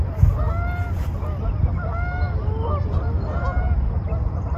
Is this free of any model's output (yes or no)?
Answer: yes